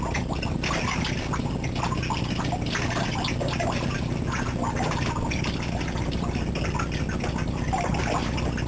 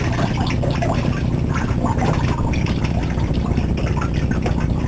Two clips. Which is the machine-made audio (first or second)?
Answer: second